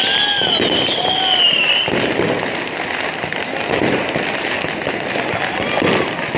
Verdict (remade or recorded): recorded